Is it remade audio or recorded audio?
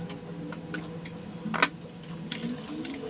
recorded